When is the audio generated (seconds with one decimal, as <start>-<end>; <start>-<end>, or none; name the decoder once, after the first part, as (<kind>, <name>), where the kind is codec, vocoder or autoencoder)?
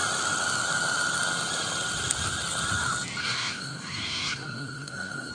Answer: 3.2-5.3 (codec, SNAC)